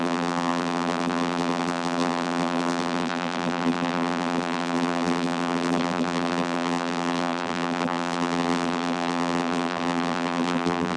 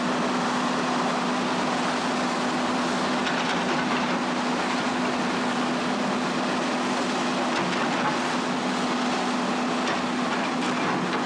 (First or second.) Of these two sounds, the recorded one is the second